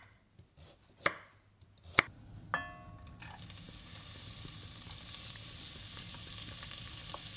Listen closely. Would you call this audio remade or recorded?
recorded